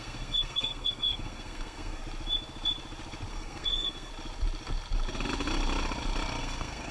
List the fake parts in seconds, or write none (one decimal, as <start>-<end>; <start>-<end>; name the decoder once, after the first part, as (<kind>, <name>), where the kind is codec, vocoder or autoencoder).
0.0-2.0 (codec, SNAC); 3.3-4.1; 6.4-6.9